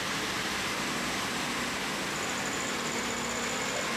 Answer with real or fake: real